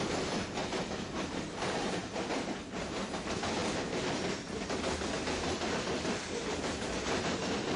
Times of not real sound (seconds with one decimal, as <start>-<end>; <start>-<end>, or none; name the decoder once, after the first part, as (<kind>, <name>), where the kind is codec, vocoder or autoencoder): 0.6-1.6 (vocoder, BigVGAN v2)